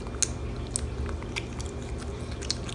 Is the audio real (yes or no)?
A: yes